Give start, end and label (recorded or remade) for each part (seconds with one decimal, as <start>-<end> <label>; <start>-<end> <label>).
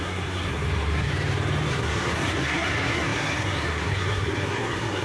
0.0-1.1 remade; 1.1-1.7 recorded; 1.7-5.0 remade